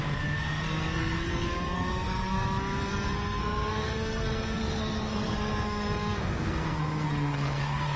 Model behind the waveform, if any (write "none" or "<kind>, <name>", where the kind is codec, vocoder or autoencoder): codec, SNAC